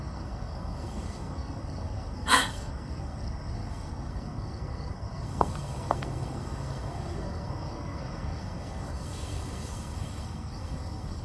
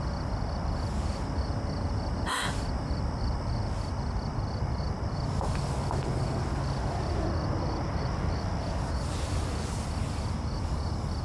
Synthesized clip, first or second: first